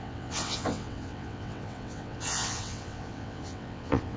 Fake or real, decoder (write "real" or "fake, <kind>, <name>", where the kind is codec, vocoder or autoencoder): fake, vocoder, WaveNeXt